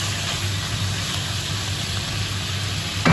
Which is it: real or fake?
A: real